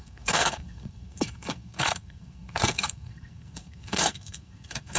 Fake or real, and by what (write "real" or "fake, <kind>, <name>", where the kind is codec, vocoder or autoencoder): fake, codec, SNAC